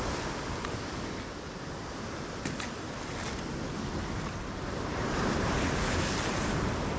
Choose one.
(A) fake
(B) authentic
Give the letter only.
B